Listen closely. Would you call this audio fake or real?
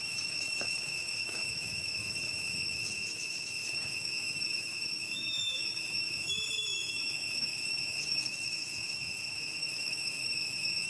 fake